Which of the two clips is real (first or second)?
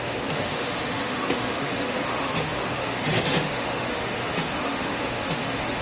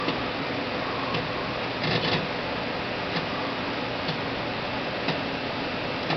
second